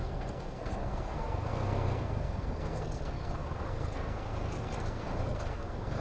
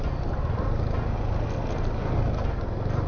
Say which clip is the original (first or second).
second